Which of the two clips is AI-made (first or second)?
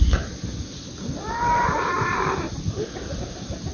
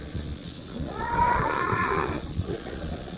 second